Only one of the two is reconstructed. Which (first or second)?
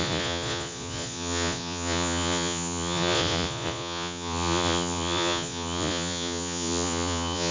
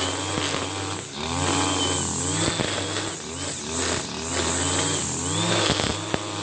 first